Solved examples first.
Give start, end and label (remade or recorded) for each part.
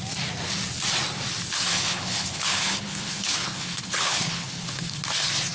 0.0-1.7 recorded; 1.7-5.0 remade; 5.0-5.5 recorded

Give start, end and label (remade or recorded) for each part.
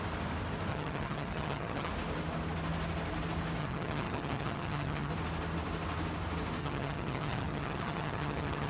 0.0-0.7 recorded; 0.7-1.9 remade; 1.9-3.6 recorded; 3.6-5.1 remade; 5.1-6.6 recorded; 6.6-8.7 remade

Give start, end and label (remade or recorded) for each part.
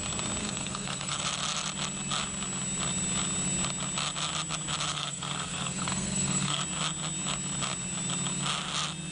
0.0-0.4 recorded; 0.4-1.2 remade; 1.2-4.9 recorded; 4.9-6.6 remade; 6.6-9.1 recorded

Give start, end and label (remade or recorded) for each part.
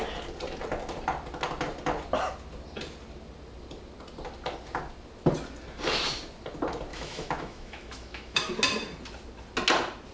0.0-6.9 recorded; 6.9-8.5 remade; 8.5-10.1 recorded